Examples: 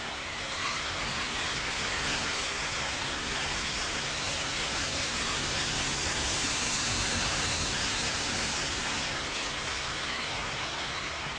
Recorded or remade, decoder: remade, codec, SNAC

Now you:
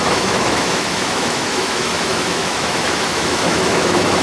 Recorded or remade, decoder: remade, autoencoder, DAC-VAE